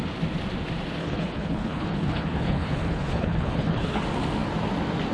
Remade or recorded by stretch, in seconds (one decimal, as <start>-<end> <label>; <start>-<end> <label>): 0.0-1.0 recorded; 1.0-4.0 remade; 4.0-5.1 recorded